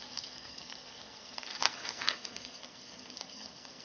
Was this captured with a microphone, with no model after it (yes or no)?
no